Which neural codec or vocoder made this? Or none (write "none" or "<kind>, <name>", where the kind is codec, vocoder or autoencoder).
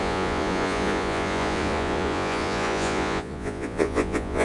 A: vocoder, Vocos